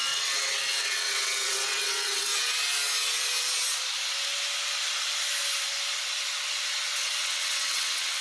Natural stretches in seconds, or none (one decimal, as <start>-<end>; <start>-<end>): 2.3-7.2

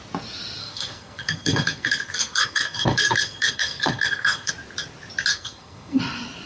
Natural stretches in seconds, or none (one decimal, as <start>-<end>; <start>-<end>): 0.0-0.6; 4.5-5.3; 6.0-6.5